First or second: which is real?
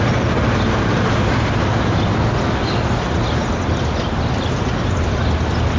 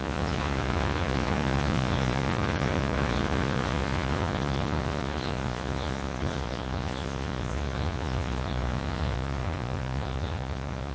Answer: first